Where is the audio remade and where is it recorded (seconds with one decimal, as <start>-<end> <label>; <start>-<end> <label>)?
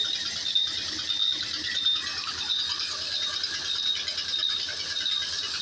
0.0-5.6 recorded